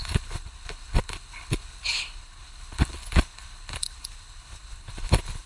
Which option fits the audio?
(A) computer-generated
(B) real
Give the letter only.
A